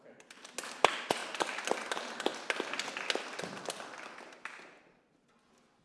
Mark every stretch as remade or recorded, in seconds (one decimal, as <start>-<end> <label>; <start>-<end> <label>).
0.0-5.8 recorded